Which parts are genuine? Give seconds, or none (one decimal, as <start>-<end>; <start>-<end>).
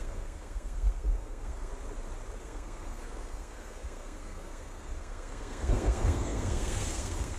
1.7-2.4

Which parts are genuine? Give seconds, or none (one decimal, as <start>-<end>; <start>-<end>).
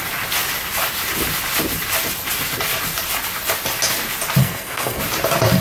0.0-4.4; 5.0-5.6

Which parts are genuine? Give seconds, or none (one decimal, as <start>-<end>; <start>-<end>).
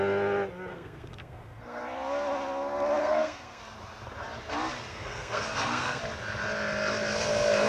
0.0-0.7; 1.8-3.0; 3.6-4.9; 6.0-7.7